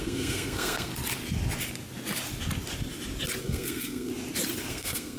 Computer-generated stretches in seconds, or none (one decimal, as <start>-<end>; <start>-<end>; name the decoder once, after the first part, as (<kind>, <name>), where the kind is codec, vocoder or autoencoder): 0.0-0.9 (codec, SNAC); 3.4-4.1; 4.7-5.2